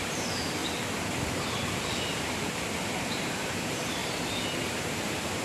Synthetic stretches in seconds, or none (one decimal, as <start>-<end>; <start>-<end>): 0.0-0.6; 3.0-5.4